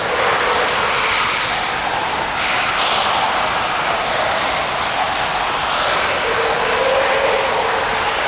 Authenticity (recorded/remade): recorded